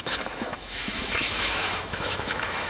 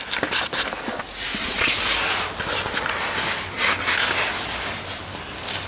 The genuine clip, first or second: second